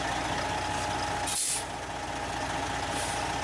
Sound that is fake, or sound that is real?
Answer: real